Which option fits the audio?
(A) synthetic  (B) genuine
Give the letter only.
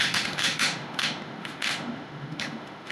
A